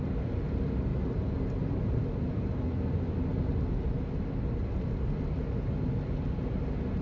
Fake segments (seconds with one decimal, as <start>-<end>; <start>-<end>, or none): 0.9-2.5